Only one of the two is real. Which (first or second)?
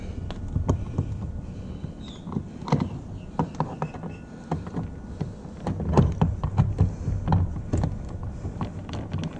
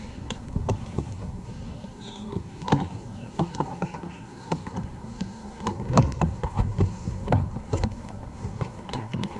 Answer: first